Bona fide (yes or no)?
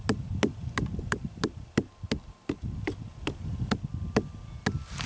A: yes